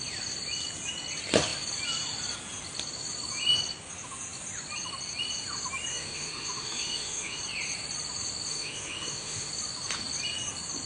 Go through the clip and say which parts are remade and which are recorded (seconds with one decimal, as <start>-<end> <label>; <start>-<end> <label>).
0.0-5.9 recorded; 5.9-7.4 remade; 7.4-8.5 recorded; 8.5-9.5 remade; 9.5-10.9 recorded

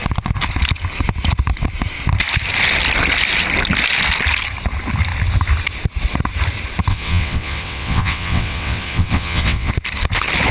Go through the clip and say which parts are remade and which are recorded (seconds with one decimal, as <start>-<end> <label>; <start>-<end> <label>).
0.0-6.9 recorded; 6.9-9.7 remade; 9.7-10.5 recorded

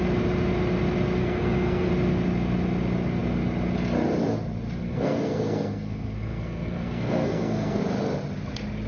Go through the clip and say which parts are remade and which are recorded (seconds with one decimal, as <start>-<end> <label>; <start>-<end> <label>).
0.0-1.2 recorded; 1.2-1.9 remade; 1.9-4.8 recorded; 4.8-7.8 remade; 7.8-8.9 recorded

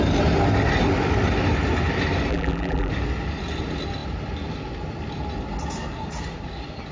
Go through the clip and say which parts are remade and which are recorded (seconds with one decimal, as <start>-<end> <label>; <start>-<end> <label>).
0.0-2.3 recorded; 2.3-2.9 remade; 2.9-6.9 recorded

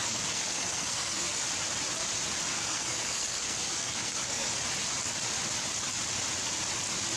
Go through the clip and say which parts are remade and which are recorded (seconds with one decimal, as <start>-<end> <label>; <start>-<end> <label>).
0.0-1.4 remade; 1.4-2.5 recorded; 2.5-4.6 remade; 4.6-7.2 recorded